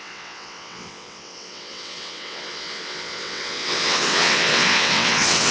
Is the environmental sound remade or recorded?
remade